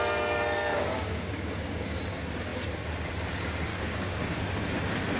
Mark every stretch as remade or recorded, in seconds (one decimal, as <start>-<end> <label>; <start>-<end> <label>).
0.0-0.7 recorded; 0.7-2.0 remade; 2.0-3.7 recorded; 3.7-4.4 remade; 4.4-5.2 recorded